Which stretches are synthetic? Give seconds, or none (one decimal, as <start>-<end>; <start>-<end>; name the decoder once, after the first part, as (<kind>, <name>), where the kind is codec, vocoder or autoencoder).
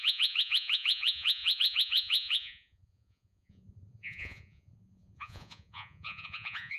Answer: 0.0-6.8 (vocoder, Vocos)